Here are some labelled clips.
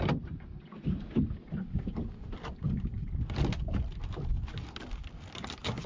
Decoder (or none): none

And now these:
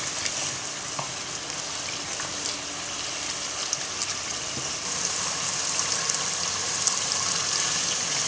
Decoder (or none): none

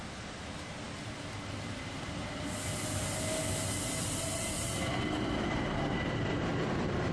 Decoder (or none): none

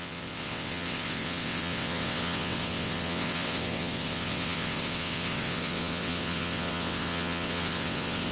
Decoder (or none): vocoder, WaveNeXt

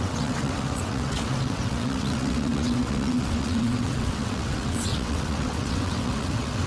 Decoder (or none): vocoder, WaveNeXt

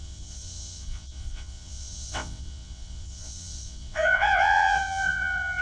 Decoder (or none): vocoder, WaveNeXt